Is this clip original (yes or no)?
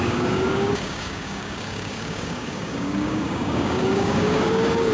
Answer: no